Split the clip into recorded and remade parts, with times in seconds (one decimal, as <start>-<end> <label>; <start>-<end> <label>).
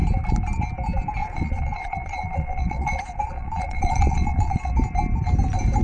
0.0-1.2 recorded; 1.2-4.7 remade; 4.7-5.8 recorded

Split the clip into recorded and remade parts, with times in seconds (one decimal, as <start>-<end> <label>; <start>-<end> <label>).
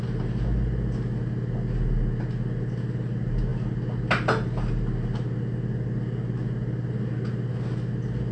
0.0-8.3 recorded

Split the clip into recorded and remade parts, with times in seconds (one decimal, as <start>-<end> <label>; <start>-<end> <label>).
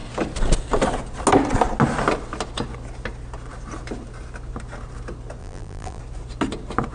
0.0-5.4 recorded; 5.4-6.0 remade; 6.0-6.9 recorded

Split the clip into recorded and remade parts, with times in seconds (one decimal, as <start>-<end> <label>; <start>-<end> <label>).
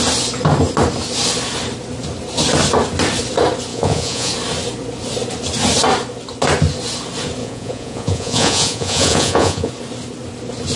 0.0-3.7 recorded; 3.7-4.3 remade; 4.3-7.4 recorded; 7.4-9.7 remade; 9.7-10.8 recorded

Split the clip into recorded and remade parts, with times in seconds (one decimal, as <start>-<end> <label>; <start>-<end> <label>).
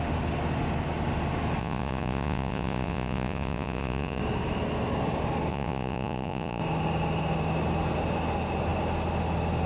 0.0-1.6 recorded; 1.6-4.2 remade; 4.2-5.5 recorded; 5.5-6.6 remade; 6.6-9.7 recorded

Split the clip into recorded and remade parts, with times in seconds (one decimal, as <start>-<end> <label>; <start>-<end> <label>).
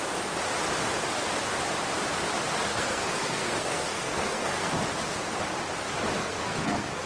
0.0-2.7 recorded; 2.7-4.7 remade; 4.7-6.2 recorded; 6.2-7.1 remade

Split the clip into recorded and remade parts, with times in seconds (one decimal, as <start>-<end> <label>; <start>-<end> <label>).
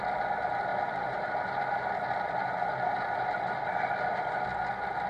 0.0-5.1 recorded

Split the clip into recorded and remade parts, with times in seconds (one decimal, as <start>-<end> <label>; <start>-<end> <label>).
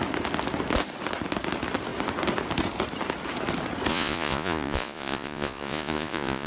0.0-3.9 recorded; 3.9-6.5 remade